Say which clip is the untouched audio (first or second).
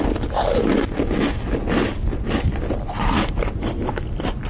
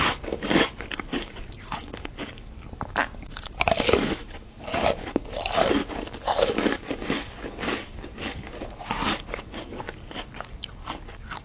first